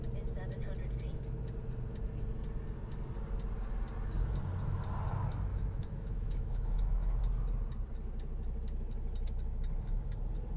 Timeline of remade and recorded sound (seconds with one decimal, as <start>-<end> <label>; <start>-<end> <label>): 0.0-5.5 recorded; 5.5-7.2 remade; 7.2-10.6 recorded